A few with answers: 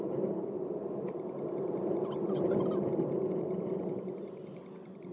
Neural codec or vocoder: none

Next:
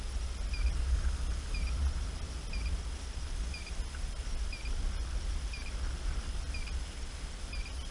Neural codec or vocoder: none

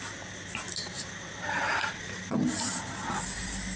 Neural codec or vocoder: none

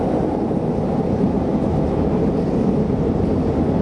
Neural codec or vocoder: none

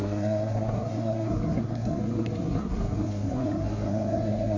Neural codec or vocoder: codec, SNAC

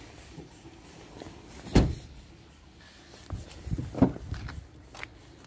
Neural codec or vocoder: none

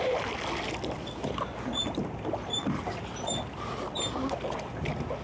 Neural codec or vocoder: none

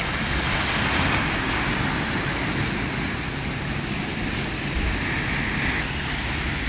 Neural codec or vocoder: none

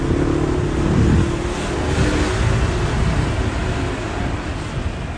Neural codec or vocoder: none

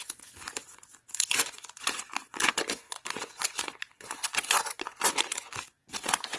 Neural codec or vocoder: vocoder, Vocos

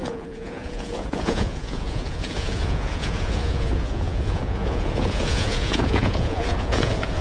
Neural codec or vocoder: vocoder, Vocos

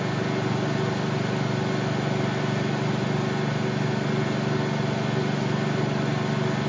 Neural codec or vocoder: none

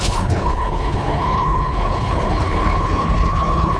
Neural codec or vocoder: codec, HILCodec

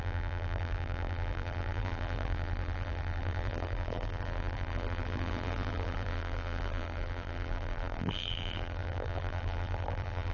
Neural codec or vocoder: vocoder, BigVGAN v2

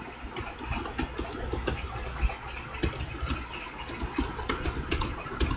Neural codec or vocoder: none